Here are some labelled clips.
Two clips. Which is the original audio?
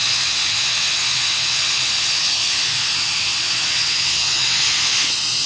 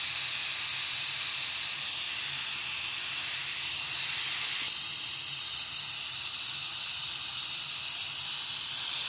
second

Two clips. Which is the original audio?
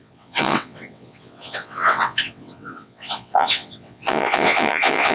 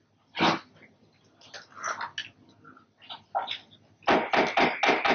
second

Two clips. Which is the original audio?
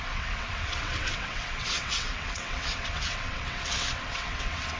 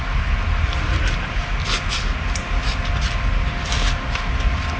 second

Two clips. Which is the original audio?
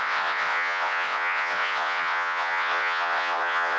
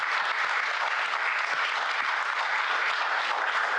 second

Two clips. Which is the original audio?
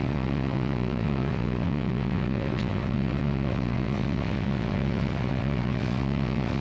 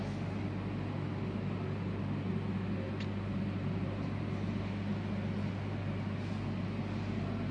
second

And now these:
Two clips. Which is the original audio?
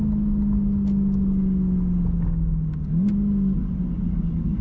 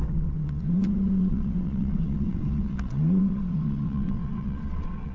first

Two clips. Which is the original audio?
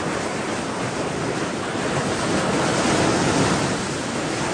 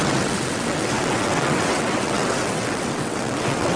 first